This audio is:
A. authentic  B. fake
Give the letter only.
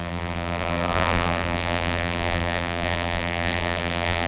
B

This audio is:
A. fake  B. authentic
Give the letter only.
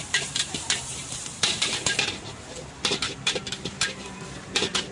A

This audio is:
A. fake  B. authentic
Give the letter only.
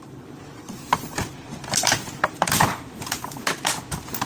A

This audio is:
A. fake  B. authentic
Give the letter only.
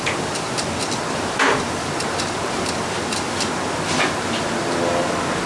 A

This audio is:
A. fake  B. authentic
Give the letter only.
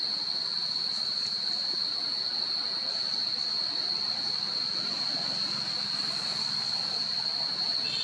B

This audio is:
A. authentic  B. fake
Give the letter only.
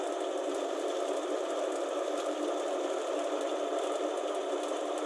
B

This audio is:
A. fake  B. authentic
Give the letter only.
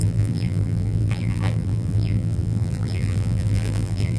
A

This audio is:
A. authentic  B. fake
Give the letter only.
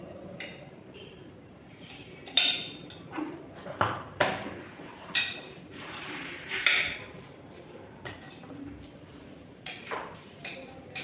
B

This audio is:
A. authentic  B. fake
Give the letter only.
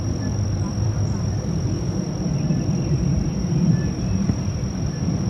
B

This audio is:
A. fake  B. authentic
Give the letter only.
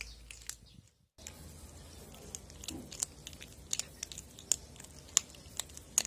B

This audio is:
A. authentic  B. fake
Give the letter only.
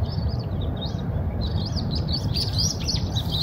B